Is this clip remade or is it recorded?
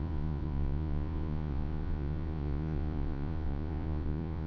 remade